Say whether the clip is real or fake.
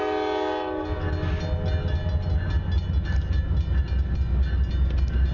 real